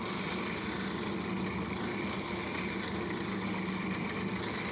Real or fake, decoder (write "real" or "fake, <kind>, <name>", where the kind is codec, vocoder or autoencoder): real